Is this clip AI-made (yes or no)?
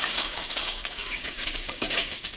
yes